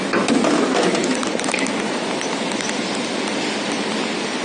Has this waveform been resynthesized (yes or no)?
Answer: no